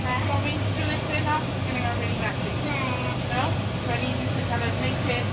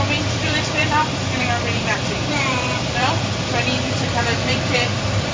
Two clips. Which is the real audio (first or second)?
first